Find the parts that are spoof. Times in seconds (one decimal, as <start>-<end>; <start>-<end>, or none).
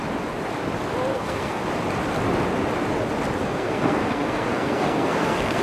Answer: 1.1-1.6; 3.4-5.6